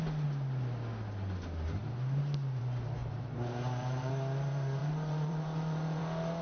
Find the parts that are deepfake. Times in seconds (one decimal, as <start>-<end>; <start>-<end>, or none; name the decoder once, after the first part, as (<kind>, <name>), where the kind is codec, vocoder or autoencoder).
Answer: 3.0-4.1 (vocoder, BigVGAN v2); 4.8-6.0